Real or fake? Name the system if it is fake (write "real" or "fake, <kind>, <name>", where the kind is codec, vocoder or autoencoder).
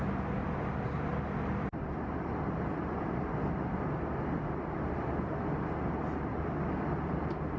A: real